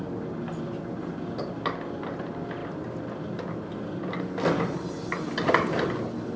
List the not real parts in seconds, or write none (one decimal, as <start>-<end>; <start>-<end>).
none